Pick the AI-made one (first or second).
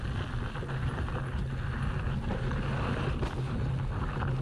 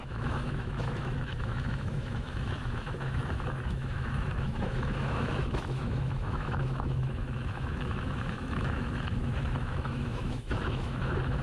second